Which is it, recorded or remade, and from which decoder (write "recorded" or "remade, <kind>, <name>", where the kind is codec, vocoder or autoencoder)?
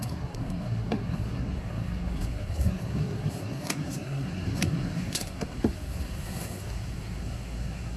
remade, codec, SNAC